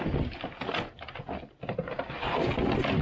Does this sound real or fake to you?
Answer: real